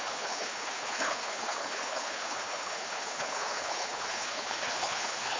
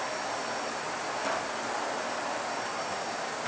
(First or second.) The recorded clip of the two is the second